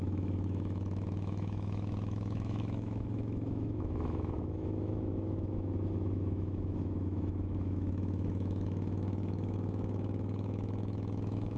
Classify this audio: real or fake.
fake